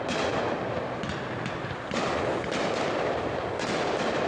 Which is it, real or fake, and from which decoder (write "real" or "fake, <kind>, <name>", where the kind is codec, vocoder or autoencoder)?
real